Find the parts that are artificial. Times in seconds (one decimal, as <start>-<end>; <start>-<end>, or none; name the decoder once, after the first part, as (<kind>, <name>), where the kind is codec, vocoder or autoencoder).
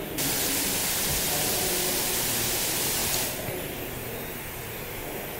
3.0-3.5 (vocoder, BigVGAN v2)